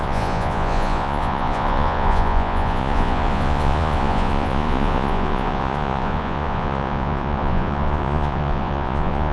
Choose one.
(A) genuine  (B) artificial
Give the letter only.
B